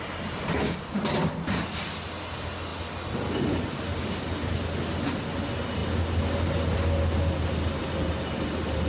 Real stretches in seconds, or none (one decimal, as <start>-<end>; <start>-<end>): 0.0-8.9